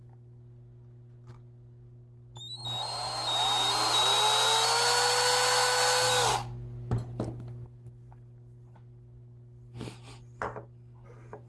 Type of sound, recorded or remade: recorded